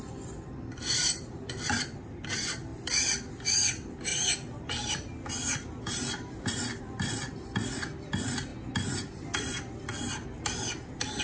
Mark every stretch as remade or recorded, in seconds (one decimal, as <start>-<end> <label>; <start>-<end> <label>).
0.0-4.1 remade; 4.1-6.8 recorded; 6.8-8.5 remade; 8.5-11.2 recorded